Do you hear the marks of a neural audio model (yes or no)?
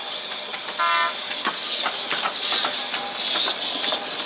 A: no